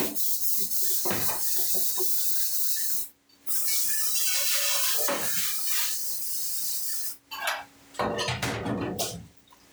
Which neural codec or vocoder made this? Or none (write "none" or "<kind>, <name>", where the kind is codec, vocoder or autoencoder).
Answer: none